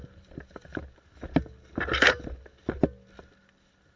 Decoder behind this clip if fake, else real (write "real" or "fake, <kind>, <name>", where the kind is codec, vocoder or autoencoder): real